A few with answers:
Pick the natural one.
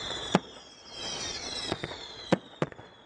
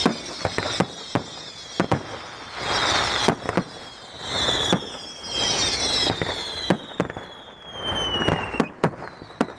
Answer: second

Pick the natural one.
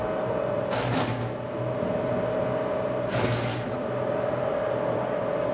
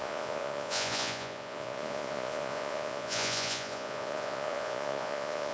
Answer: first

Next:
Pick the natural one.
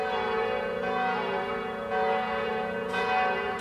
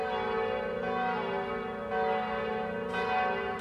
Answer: second